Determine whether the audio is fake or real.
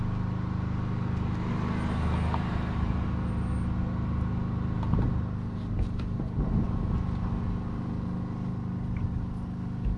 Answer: real